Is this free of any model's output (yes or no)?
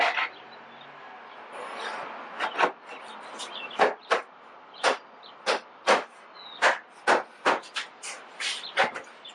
yes